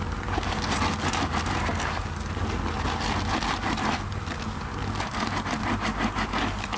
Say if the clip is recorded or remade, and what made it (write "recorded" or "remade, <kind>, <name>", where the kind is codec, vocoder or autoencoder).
recorded